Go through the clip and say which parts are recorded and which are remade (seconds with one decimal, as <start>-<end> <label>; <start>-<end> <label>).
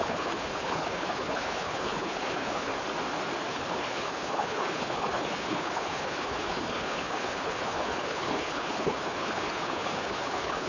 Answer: 0.0-2.7 remade; 2.7-3.5 recorded; 3.5-10.7 remade